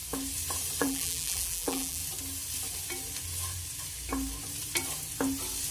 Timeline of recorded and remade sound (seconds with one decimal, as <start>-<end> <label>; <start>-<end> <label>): 0.0-0.8 recorded; 0.8-2.0 remade; 2.0-5.7 recorded